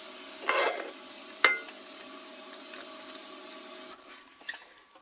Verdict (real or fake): real